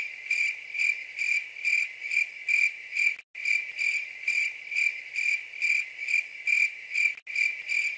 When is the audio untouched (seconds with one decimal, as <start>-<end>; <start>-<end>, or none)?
0.0-8.0